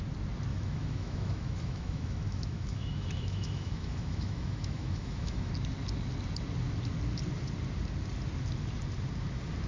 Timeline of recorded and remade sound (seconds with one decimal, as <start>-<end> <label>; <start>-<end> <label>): 0.0-0.5 recorded; 0.5-5.5 remade; 5.5-9.7 recorded